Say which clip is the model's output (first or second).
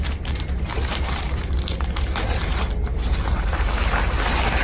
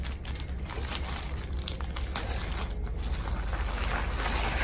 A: first